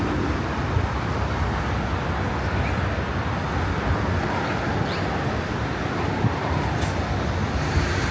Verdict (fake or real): real